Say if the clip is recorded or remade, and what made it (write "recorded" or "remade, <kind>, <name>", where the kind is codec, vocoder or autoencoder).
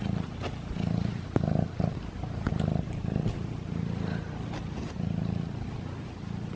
recorded